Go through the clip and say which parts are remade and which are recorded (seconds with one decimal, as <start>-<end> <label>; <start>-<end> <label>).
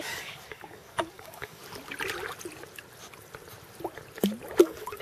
0.0-1.6 remade; 1.6-4.6 recorded; 4.6-5.0 remade